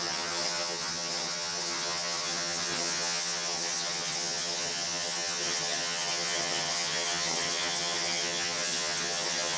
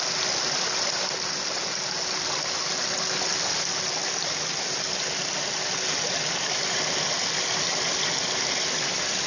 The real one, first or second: second